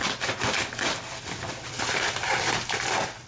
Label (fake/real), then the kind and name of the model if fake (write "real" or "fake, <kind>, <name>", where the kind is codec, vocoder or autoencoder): fake, vocoder, BigVGAN v2